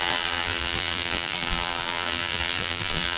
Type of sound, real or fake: fake